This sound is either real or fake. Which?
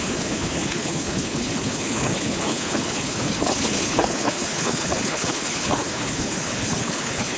fake